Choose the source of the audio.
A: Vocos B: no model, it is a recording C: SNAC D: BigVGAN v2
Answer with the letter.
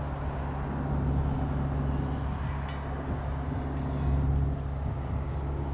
B